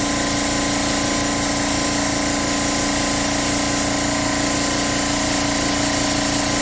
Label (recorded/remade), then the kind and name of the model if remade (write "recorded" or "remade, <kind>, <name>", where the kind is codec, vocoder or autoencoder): recorded